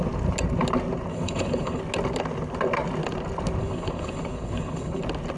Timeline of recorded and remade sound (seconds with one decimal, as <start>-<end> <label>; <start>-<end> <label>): 0.0-1.1 recorded; 1.1-1.8 remade; 1.8-3.6 recorded; 3.6-5.0 remade; 5.0-5.4 recorded